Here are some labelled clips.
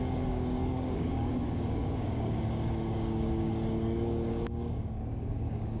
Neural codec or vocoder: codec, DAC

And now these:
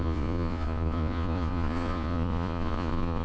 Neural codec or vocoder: vocoder, Vocos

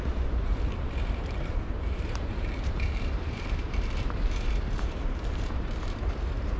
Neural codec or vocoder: vocoder, BigVGAN v2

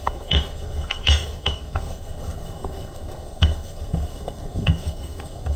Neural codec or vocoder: codec, SNAC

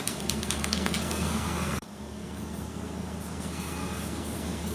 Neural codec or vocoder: codec, SNAC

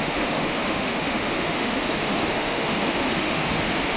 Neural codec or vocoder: autoencoder, DAC-VAE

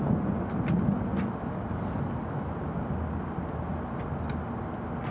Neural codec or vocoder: none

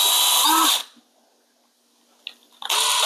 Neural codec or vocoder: none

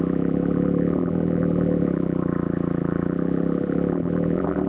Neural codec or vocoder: vocoder, BigVGAN v2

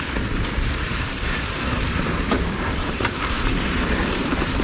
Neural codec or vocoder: vocoder, BigVGAN v2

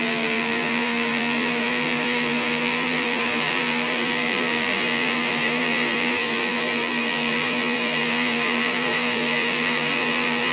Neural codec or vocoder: vocoder, BigVGAN v2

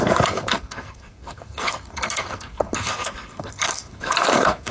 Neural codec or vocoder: codec, SNAC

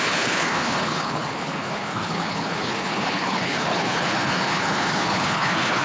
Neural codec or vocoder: codec, HILCodec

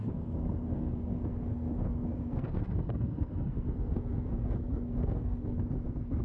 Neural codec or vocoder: codec, SNAC